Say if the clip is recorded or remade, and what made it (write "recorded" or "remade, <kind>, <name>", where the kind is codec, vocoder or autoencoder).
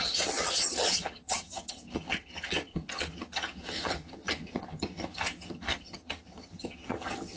remade, vocoder, HiFi-GAN